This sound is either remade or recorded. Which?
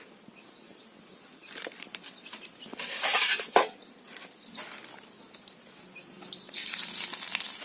recorded